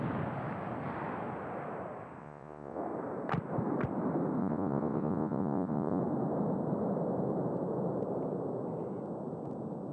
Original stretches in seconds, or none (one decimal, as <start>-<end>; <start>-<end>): 0.0-2.2; 2.8-4.4; 6.0-9.9